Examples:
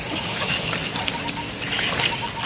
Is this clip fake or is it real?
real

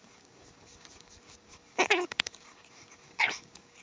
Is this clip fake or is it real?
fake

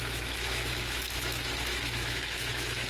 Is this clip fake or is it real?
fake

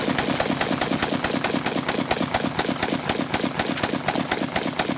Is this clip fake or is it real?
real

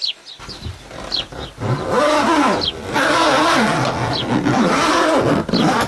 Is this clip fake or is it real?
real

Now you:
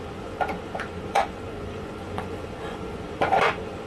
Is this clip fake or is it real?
fake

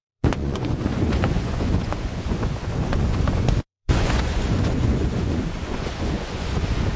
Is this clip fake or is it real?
fake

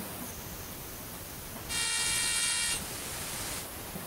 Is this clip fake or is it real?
real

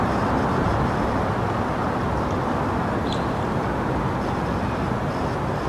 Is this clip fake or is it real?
real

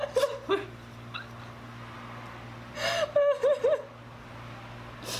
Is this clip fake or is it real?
real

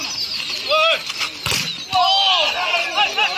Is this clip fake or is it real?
real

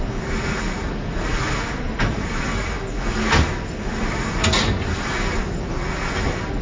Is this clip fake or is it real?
real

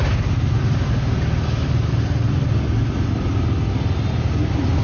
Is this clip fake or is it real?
real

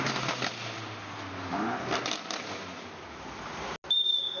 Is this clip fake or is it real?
real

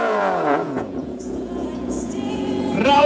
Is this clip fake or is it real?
fake